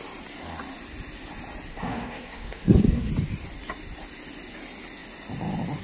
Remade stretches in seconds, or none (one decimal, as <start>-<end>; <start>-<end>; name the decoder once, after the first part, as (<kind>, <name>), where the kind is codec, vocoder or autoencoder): 1.7-3.1 (codec, SNAC)